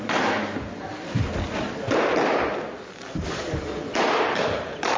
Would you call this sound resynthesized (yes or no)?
no